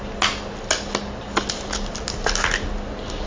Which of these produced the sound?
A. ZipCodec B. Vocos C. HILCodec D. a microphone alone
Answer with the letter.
D